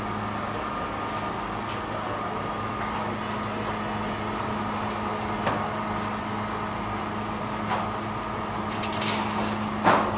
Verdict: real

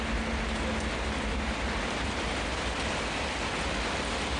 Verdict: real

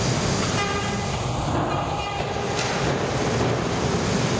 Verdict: real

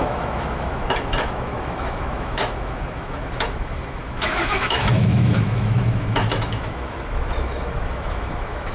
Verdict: fake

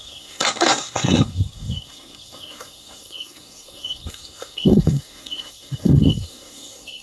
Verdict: fake